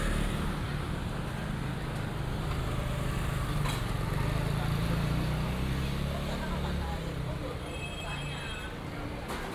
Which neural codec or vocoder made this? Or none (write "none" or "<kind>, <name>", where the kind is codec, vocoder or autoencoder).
none